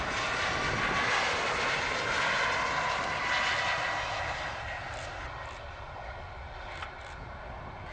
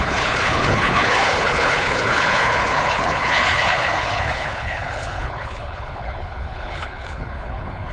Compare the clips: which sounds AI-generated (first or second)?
second